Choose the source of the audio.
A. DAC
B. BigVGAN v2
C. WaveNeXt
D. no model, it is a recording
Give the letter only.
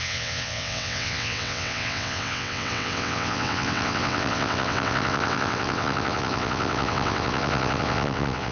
C